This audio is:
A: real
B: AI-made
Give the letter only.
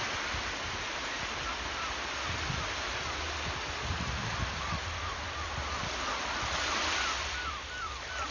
A